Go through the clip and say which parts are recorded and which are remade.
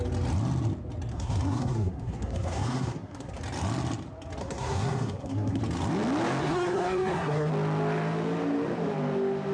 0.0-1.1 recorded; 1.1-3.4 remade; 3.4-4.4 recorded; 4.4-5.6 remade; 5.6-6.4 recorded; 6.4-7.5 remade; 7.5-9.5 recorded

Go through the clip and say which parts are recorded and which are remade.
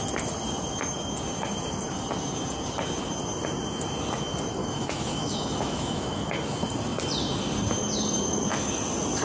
0.0-4.6 recorded; 4.6-6.3 remade; 6.3-9.2 recorded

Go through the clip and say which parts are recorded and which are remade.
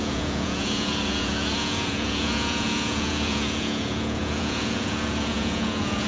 0.0-6.1 remade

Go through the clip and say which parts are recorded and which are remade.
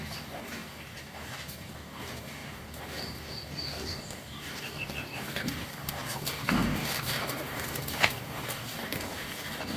0.0-9.8 remade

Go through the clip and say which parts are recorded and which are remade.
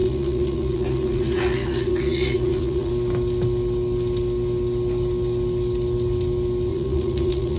0.0-2.9 remade; 2.9-6.7 recorded; 6.7-7.6 remade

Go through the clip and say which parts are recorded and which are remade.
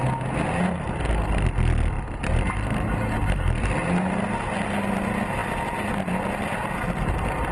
0.0-7.5 recorded